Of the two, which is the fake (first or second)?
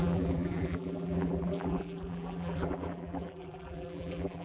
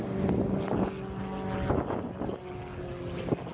first